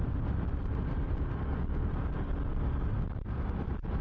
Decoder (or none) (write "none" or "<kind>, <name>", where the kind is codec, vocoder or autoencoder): none